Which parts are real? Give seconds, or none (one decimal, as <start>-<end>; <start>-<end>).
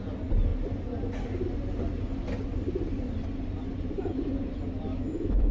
0.0-4.9